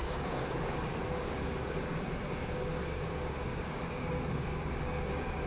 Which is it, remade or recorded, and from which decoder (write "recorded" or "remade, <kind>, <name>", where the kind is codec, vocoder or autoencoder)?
remade, codec, DAC